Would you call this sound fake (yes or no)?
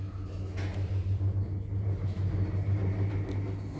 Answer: no